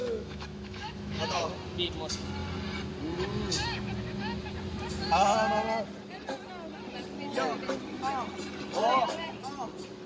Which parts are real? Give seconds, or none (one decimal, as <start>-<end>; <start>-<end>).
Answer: 1.4-10.1